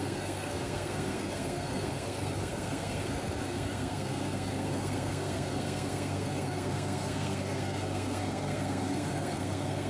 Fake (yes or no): yes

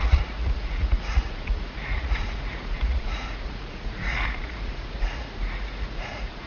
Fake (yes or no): yes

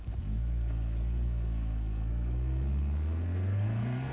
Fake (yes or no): yes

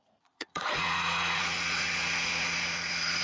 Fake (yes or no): yes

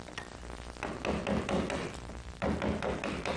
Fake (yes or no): no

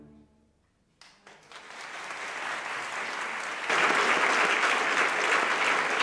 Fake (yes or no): no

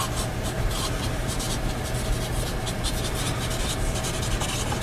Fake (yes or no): no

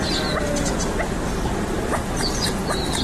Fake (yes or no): no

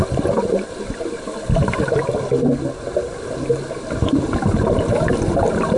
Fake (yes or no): no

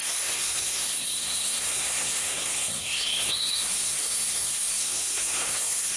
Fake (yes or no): yes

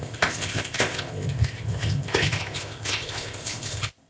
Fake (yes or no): yes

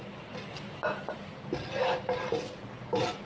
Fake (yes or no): no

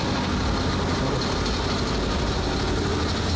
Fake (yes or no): no